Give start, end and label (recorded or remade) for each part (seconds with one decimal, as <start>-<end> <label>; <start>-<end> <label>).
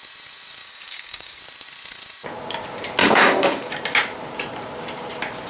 0.0-0.6 recorded; 0.6-1.4 remade; 1.4-3.0 recorded; 3.0-3.7 remade; 3.7-5.5 recorded